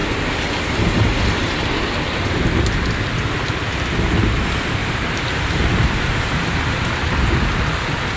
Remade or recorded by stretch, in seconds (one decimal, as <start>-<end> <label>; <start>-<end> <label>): 0.0-4.8 recorded; 4.8-6.6 remade; 6.6-8.2 recorded